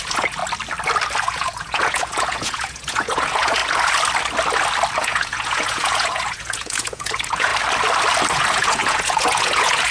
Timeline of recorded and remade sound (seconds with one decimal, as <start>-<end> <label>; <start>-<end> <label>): 0.0-0.4 remade; 0.4-1.2 recorded; 1.2-3.6 remade; 3.6-5.0 recorded; 5.0-7.5 remade; 7.5-8.3 recorded; 8.3-9.9 remade

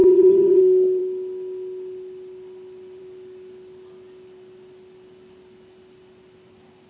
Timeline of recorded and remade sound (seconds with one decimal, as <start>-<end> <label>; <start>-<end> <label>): 0.0-0.6 remade; 0.6-6.9 recorded

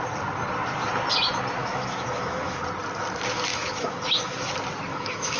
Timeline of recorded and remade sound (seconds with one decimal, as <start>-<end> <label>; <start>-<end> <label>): 0.0-1.6 recorded; 1.6-2.6 remade; 2.6-3.5 recorded; 3.5-4.5 remade; 4.5-4.9 recorded; 4.9-5.4 remade